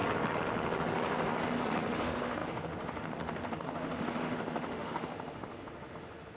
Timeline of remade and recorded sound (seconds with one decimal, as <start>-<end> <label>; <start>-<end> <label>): 0.0-2.0 recorded; 2.0-6.4 remade

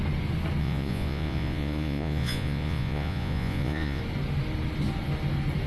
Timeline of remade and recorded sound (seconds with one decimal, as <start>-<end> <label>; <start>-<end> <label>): 0.0-0.6 recorded; 0.6-4.0 remade; 4.0-5.7 recorded

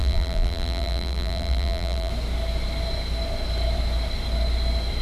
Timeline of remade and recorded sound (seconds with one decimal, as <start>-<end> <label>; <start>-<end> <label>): 0.0-2.1 remade; 2.1-5.0 recorded

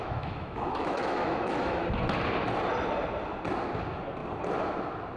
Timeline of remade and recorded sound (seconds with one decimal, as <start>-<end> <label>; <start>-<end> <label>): 0.0-1.8 remade; 1.8-5.2 recorded

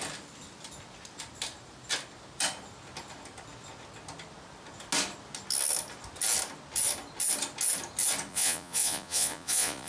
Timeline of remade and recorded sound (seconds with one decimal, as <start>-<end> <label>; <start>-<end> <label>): 0.0-8.3 recorded; 8.3-9.9 remade

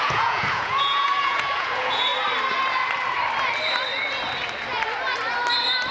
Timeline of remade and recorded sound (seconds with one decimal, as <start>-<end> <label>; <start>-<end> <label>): 0.0-2.1 remade; 2.1-5.9 recorded

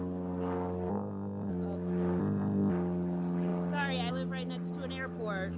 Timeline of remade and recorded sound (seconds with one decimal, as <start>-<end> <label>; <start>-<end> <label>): 0.0-0.9 recorded; 0.9-1.5 remade; 1.5-2.2 recorded; 2.2-2.7 remade; 2.7-5.6 recorded